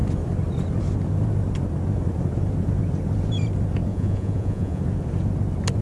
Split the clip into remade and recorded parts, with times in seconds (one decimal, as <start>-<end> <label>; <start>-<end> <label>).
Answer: 0.0-3.9 recorded; 3.9-4.8 remade; 4.8-5.8 recorded